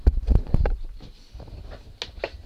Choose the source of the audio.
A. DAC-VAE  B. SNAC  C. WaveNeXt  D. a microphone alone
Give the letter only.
D